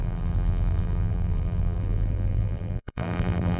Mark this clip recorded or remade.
remade